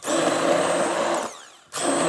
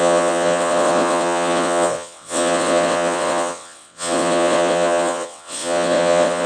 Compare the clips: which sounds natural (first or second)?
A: first